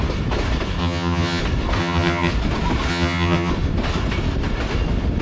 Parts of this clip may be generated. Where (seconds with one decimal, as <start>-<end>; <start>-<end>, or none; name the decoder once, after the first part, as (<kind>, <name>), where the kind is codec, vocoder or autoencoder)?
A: 0.8-1.4 (vocoder, HiFi-GAN); 1.8-2.3; 2.9-3.5